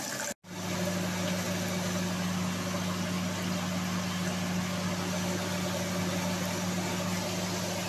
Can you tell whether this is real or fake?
real